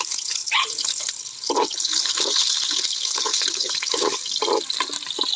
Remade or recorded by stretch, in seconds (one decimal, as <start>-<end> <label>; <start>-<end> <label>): 0.0-4.2 remade; 4.2-5.4 recorded